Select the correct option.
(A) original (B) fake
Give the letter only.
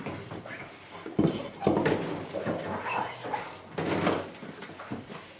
A